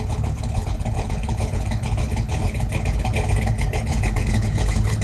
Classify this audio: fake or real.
fake